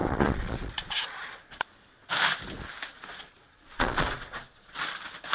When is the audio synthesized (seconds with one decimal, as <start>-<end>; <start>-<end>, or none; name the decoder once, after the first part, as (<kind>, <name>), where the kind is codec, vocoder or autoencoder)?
0.0-2.1 (vocoder, Vocos); 2.9-4.8